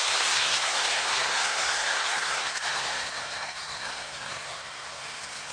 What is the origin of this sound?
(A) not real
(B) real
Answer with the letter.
A